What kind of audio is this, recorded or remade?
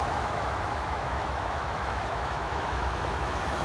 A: remade